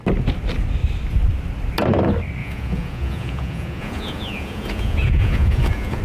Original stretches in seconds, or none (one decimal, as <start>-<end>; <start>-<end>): 0.0-2.4